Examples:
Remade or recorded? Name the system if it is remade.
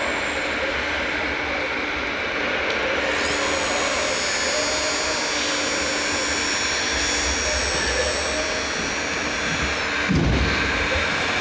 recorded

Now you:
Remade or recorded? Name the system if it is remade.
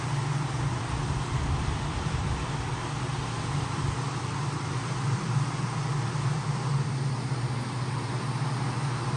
remade, vocoder, BigVGAN v2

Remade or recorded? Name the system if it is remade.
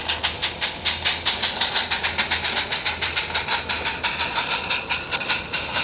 recorded